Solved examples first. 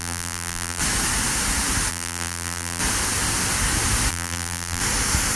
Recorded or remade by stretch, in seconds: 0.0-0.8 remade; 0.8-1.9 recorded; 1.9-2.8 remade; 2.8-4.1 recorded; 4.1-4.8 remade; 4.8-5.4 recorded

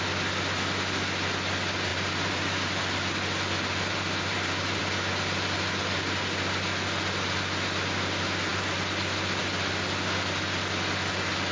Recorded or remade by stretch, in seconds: 0.0-1.9 recorded; 1.9-2.8 remade; 2.8-3.9 recorded; 3.9-4.8 remade; 4.8-11.5 recorded

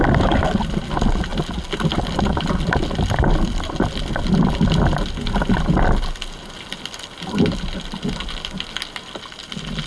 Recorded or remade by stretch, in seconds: 0.0-9.9 recorded

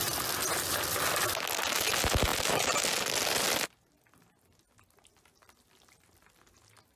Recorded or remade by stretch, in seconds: 0.0-7.0 recorded

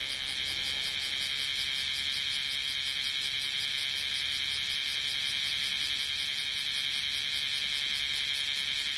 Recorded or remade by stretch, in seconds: 0.0-9.0 recorded